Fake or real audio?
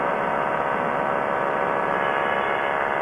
real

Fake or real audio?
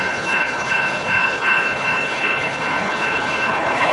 fake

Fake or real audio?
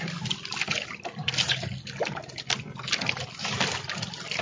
real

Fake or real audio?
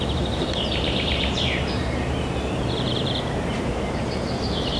fake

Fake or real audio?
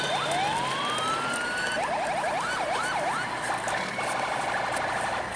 real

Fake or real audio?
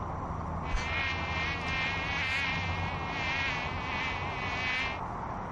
real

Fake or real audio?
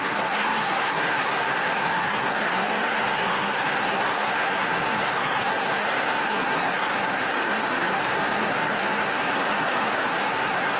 fake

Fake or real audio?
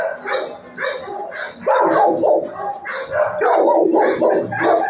real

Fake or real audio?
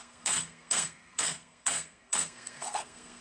fake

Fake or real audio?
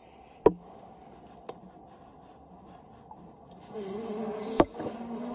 real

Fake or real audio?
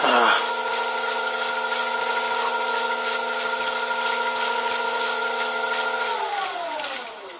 real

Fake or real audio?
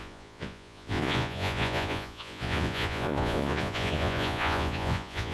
fake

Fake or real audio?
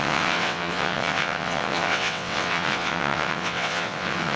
fake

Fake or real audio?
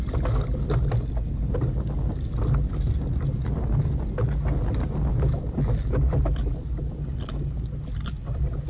real